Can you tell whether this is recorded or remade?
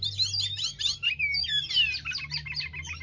recorded